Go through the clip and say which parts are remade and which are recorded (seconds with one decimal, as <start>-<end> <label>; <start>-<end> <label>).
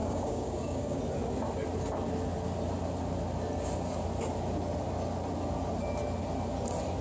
0.0-1.0 remade; 1.0-7.0 recorded